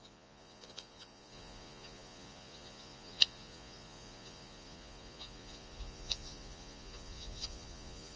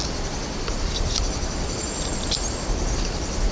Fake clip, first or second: first